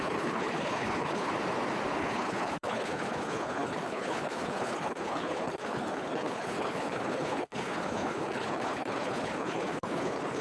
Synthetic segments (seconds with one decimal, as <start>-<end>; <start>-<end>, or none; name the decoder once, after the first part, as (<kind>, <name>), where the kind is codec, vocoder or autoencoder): 0.0-1.3 (codec, HILCodec); 2.0-10.4